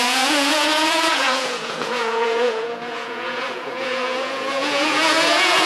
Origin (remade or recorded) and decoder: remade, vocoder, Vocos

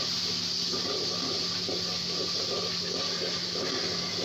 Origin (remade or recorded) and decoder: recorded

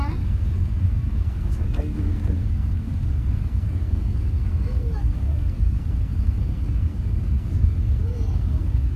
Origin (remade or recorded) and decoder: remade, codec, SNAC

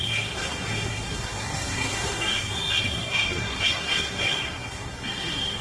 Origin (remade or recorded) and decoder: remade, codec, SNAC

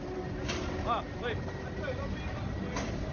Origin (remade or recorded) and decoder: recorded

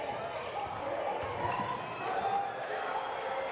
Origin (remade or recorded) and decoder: recorded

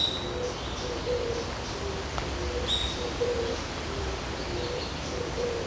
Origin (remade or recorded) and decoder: recorded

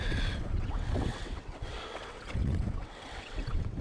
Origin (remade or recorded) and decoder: remade, vocoder, WaveNeXt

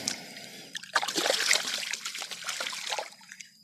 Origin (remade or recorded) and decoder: recorded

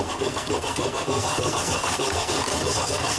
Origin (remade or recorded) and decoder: remade, codec, SNAC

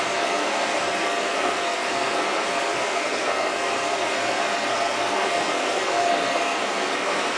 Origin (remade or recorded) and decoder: remade, codec, SNAC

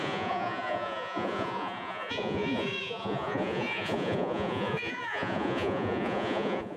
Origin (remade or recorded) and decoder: remade, vocoder, Vocos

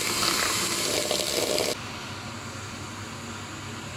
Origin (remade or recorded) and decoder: recorded